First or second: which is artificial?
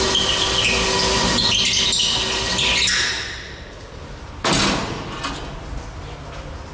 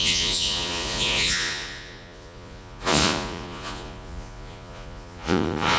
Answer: second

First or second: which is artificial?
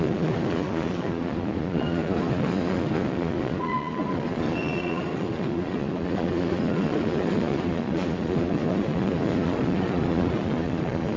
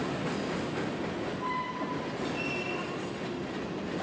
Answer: first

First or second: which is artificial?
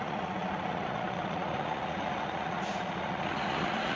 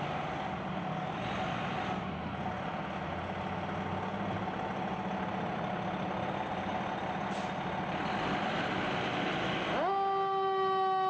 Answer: first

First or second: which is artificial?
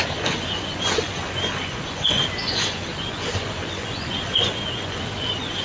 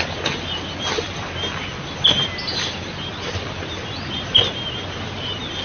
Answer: first